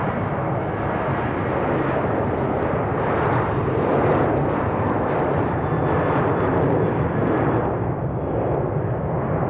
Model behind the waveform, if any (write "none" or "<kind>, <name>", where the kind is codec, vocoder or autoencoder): none